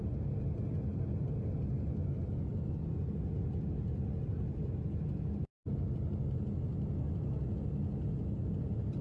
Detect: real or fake real